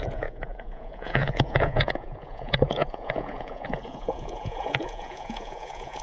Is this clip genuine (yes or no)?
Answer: no